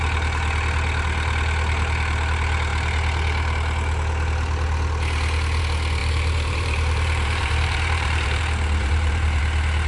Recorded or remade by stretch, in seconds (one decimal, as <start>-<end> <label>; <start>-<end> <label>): 0.0-6.0 recorded; 6.0-8.4 remade; 8.4-8.8 recorded; 8.8-9.4 remade; 9.4-9.9 recorded